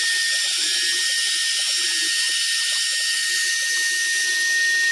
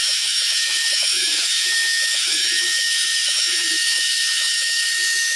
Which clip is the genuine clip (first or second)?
first